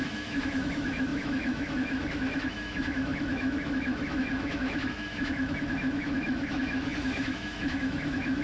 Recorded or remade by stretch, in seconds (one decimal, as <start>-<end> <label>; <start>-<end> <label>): 0.0-8.4 remade